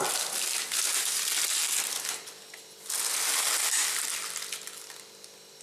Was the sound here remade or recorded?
recorded